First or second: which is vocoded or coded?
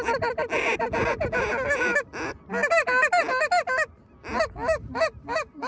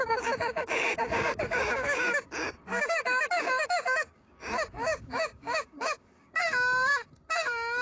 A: second